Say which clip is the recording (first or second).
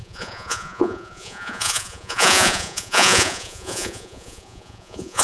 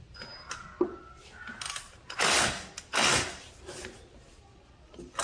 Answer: second